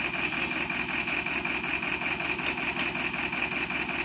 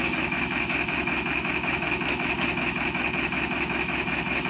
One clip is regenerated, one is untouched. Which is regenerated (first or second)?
second